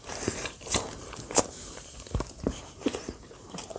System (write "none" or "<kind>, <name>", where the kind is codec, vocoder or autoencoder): vocoder, BigVGAN v2